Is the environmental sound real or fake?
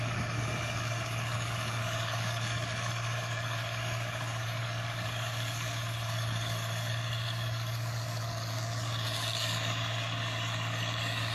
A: fake